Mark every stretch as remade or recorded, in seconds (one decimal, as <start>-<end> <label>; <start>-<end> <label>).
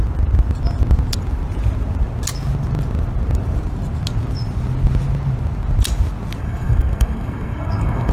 0.0-6.4 recorded; 6.4-8.1 remade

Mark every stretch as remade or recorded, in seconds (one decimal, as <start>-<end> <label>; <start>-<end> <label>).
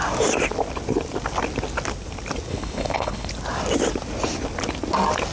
0.0-2.5 recorded; 2.5-3.3 remade; 3.3-5.3 recorded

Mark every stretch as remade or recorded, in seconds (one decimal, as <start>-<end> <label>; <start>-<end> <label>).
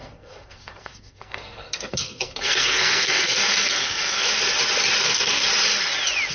0.0-4.3 remade; 4.3-5.0 recorded; 5.0-5.4 remade; 5.4-6.3 recorded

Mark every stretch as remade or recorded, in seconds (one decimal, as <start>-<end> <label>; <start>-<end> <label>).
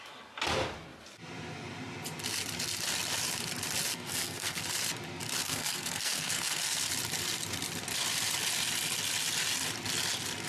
0.0-3.9 recorded; 3.9-4.6 remade; 4.6-5.4 recorded; 5.4-6.9 remade; 6.9-10.5 recorded